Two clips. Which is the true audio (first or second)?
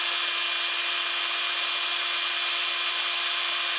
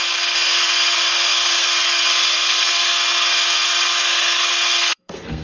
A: first